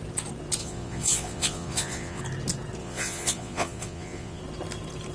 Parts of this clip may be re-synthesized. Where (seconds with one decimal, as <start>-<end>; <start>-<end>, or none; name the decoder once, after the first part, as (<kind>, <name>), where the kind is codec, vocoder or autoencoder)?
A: 0.6-2.2 (vocoder, Vocos); 2.8-4.4